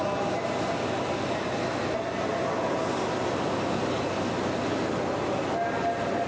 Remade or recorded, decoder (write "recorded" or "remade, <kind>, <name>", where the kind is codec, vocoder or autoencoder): recorded